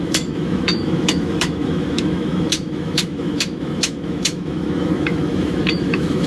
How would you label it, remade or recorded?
remade